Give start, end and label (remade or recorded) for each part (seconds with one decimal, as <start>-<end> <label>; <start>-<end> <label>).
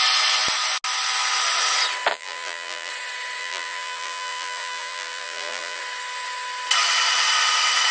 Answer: 0.0-2.1 recorded; 2.1-2.9 remade; 2.9-3.4 recorded; 3.4-5.8 remade; 5.8-7.9 recorded